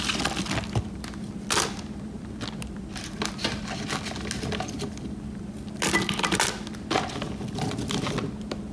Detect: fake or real real